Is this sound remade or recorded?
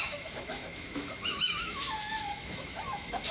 remade